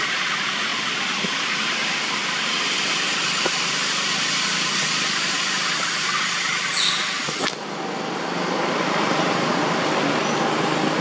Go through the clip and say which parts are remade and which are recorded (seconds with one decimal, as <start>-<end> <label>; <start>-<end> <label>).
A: 0.0-11.0 recorded